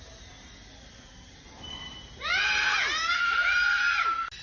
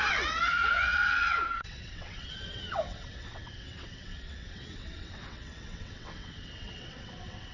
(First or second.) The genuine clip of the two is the first